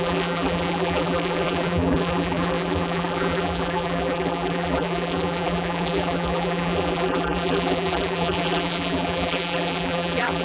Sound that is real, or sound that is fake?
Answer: fake